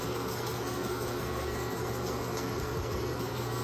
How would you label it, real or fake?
fake